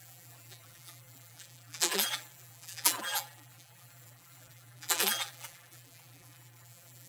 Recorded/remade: remade